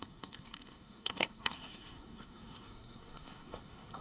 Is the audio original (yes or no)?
no